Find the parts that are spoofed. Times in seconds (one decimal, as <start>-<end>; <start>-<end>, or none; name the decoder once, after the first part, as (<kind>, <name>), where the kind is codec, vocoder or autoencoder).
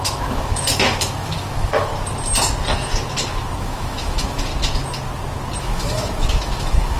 0.0-1.9 (autoencoder, DAC-VAE); 3.6-4.5; 5.6-7.0